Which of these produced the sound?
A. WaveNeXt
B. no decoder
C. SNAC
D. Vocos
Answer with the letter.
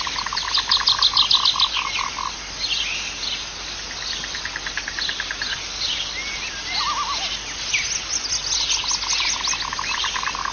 B